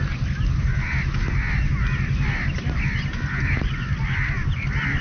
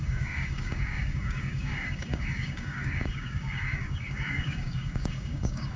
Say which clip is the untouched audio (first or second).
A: first